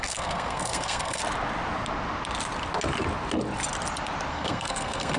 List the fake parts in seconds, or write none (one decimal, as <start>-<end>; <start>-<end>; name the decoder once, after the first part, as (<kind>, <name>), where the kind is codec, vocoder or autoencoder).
0.0-1.2 (codec, SNAC); 4.3-5.2